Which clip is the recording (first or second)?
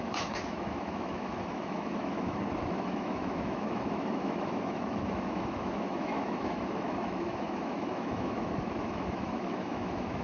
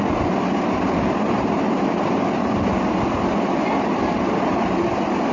second